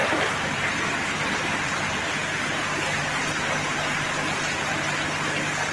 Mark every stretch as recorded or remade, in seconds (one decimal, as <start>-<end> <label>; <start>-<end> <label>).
0.0-0.6 recorded; 0.6-4.6 remade; 4.6-5.7 recorded

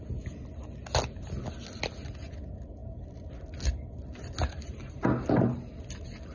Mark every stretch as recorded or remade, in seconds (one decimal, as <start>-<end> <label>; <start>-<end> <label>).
0.0-6.3 recorded

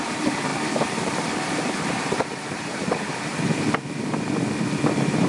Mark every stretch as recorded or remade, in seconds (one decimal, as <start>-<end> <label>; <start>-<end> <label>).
0.0-0.5 remade; 0.5-1.6 recorded; 1.6-5.3 remade

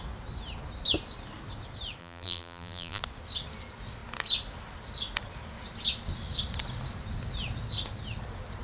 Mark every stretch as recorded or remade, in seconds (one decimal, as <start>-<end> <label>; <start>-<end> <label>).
0.0-2.0 recorded; 2.0-3.0 remade; 3.0-8.6 recorded

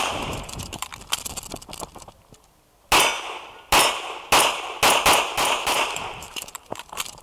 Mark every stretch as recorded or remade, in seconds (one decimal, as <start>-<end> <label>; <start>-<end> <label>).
0.0-0.9 remade; 0.9-5.2 recorded; 5.2-7.2 remade

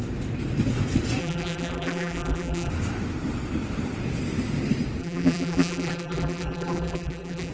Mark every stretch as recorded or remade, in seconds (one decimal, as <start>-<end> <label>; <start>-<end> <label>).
0.0-1.2 recorded; 1.2-2.7 remade; 2.7-5.0 recorded; 5.0-7.5 remade

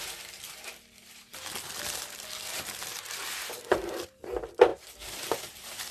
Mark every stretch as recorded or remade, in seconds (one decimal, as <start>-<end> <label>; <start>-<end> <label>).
0.0-1.3 remade; 1.3-2.9 recorded; 2.9-5.9 remade

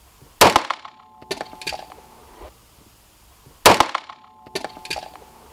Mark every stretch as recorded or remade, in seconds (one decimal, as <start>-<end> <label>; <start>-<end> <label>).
0.0-5.5 recorded